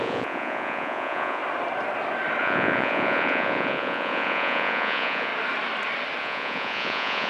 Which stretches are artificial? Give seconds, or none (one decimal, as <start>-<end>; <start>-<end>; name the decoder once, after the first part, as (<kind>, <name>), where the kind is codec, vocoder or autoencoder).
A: 0.0-1.4 (vocoder, Vocos); 2.4-5.3; 6.2-7.3